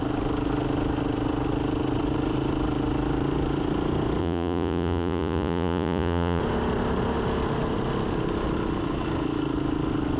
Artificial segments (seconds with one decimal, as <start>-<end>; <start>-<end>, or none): 4.2-6.4

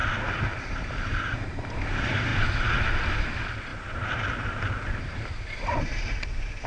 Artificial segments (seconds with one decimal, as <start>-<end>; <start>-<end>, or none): 0.0-2.3; 3.2-3.7; 4.9-6.7

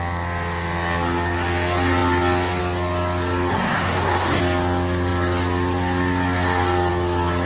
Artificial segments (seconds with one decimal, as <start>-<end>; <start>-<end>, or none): 3.5-4.4

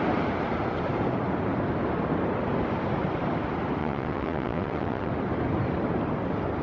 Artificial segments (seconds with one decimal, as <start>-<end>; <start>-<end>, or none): 3.8-5.1

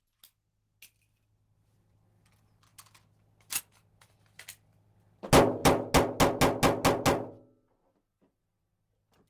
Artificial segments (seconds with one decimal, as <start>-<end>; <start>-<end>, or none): none

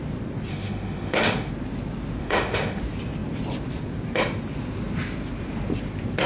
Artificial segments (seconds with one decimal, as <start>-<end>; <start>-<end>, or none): 0.5-1.5; 2.2-2.8